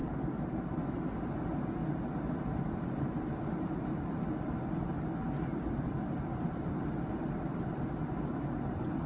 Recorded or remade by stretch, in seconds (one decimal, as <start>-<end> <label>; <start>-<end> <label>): 0.0-9.1 recorded

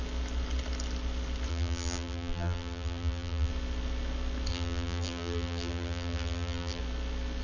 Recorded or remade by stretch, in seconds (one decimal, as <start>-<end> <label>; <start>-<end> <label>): 0.0-1.5 recorded; 1.5-3.5 remade; 3.5-4.5 recorded; 4.5-6.8 remade; 6.8-7.4 recorded